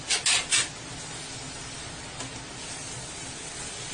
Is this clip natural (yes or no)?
yes